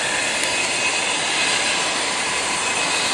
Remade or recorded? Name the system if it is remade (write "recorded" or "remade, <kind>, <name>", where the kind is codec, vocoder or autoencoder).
recorded